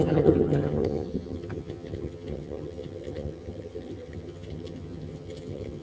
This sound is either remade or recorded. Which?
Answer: remade